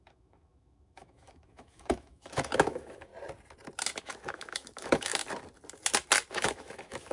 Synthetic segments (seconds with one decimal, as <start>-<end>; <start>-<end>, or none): 0.0-3.1; 4.0-5.2; 6.3-7.1